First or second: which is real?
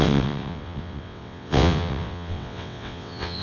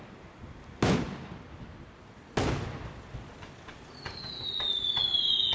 second